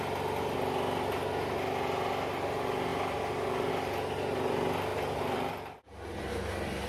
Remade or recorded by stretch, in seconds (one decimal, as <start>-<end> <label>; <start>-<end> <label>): 0.0-4.9 recorded; 4.9-5.5 remade; 5.5-6.9 recorded